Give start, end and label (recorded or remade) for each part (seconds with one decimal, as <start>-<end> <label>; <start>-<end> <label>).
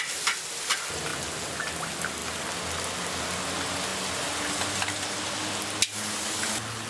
0.0-6.9 recorded